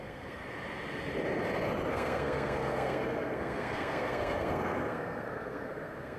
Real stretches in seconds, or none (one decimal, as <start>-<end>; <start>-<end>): 0.4-1.9